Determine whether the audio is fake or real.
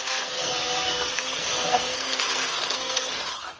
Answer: fake